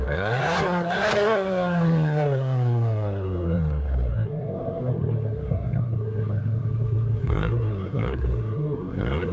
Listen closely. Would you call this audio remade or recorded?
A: remade